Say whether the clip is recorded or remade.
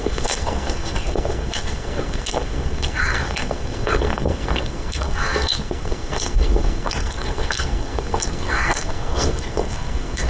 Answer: remade